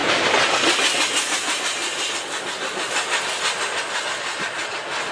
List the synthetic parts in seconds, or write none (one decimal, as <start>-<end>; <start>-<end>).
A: 0.0-0.6